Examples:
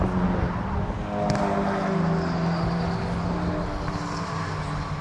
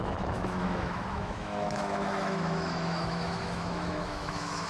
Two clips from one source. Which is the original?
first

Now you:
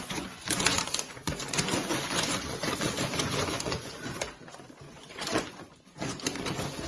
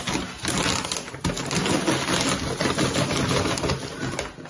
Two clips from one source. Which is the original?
second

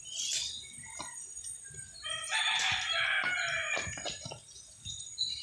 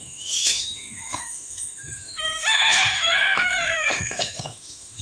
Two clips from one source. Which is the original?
first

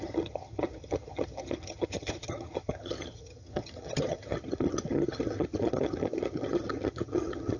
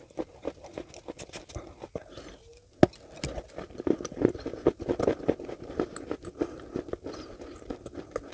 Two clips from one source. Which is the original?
second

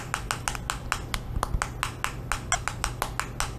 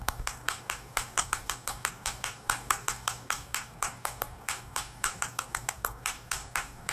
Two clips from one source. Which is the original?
first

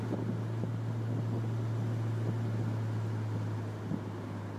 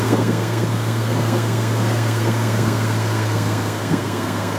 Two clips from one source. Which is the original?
first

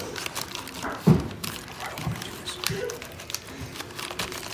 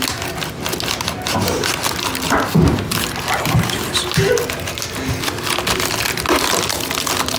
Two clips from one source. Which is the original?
second